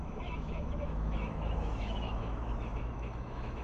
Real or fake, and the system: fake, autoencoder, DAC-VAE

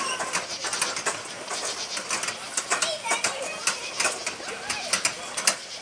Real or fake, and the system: real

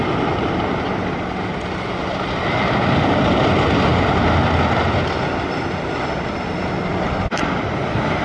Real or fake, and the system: real